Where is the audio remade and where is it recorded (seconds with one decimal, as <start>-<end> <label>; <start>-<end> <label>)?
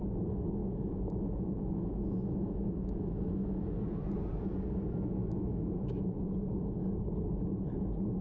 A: 0.0-0.6 recorded; 0.6-3.6 remade; 3.6-5.2 recorded; 5.2-6.0 remade; 6.0-8.2 recorded